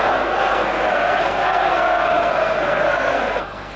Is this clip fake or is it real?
fake